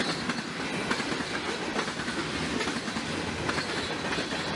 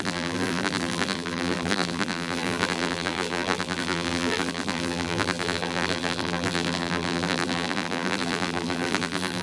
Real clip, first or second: first